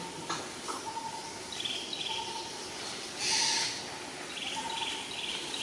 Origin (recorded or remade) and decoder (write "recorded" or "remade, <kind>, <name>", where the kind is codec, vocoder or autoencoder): recorded